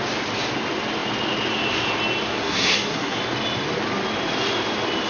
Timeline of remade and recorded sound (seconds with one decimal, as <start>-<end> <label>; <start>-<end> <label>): 0.0-2.3 recorded; 2.3-3.2 remade; 3.2-5.1 recorded